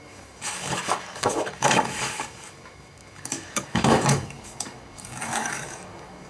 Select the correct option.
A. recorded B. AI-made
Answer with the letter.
B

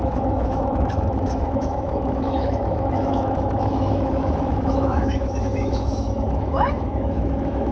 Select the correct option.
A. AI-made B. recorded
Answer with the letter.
A